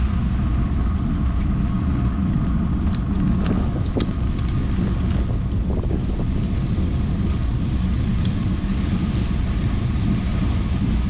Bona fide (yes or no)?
yes